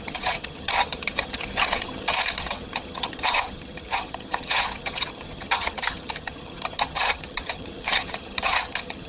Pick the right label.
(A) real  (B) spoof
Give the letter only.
B